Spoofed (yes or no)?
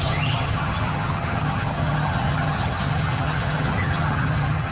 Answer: yes